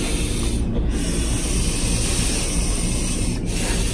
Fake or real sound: real